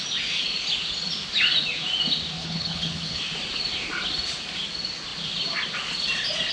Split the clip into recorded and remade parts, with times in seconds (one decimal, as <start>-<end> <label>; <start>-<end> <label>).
0.0-2.4 recorded; 2.4-3.2 remade; 3.2-6.5 recorded